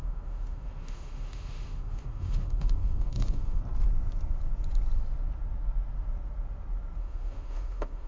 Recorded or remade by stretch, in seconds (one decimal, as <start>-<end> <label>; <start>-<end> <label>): 0.0-3.6 remade; 3.6-7.0 recorded; 7.0-8.1 remade